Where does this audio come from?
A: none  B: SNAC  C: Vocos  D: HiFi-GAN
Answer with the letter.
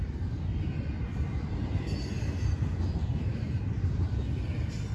A